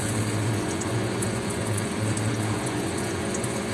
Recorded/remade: remade